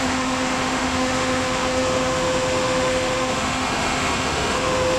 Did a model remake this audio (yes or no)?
yes